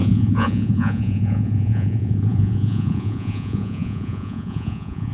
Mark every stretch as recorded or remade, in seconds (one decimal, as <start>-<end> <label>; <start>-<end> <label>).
0.0-5.1 remade